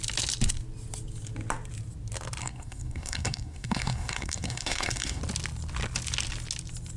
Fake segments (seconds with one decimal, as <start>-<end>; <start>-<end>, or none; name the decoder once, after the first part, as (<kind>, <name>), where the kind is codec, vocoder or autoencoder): 2.4-5.2 (codec, SNAC)